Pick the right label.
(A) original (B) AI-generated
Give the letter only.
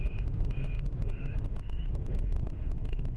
B